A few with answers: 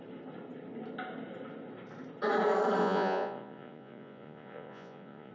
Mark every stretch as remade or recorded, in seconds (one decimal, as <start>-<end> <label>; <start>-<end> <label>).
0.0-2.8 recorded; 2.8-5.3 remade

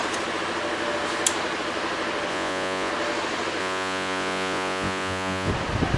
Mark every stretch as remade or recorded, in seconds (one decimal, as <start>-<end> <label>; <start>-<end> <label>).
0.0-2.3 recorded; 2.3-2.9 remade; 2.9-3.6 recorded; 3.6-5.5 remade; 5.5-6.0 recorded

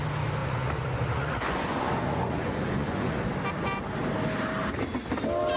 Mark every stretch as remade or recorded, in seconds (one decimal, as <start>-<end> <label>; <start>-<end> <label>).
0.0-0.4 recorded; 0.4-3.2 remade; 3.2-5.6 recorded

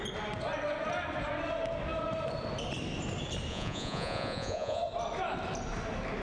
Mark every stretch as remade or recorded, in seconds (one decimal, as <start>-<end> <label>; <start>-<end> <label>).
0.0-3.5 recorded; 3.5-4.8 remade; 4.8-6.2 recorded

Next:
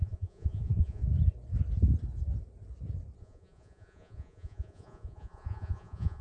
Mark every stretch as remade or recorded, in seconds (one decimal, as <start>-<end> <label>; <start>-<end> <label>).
0.0-1.0 remade; 1.0-3.2 recorded; 3.2-6.2 remade